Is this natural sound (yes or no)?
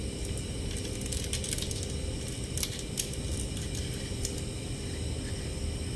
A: yes